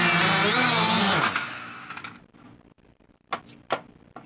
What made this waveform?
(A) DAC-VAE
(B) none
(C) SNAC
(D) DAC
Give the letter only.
B